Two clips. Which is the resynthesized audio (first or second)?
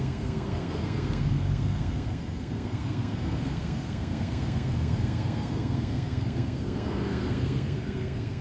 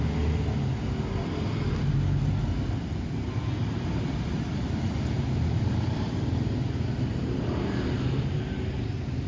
first